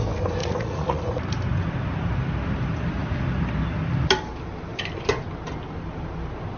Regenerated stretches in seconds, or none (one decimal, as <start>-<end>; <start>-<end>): 0.4-1.0